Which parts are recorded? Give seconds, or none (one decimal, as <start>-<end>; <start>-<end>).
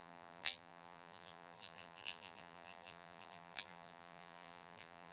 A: none